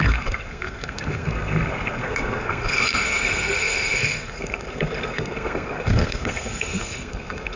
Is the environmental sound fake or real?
fake